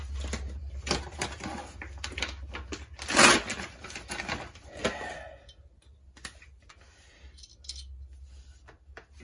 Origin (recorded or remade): recorded